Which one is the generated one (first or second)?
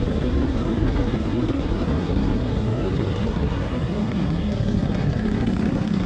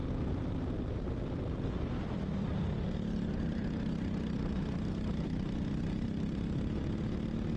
first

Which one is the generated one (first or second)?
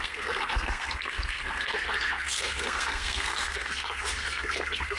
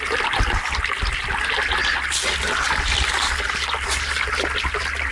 first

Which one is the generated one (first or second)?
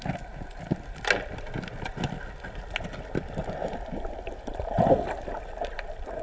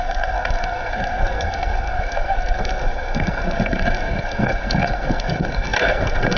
second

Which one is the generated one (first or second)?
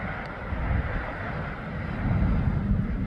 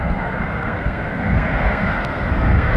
second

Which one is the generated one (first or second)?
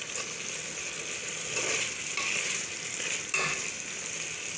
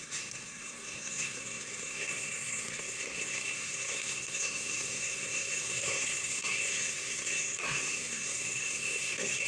second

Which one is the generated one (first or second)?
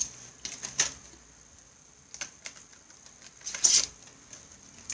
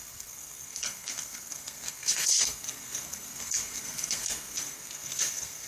second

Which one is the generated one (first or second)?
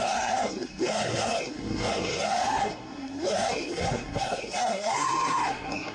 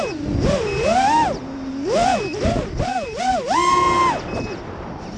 first